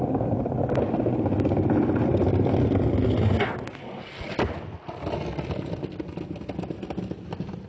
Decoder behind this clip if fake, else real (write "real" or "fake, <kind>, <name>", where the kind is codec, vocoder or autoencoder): real